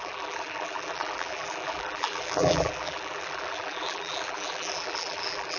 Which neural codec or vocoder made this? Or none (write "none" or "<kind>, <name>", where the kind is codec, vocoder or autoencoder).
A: vocoder, BigVGAN v2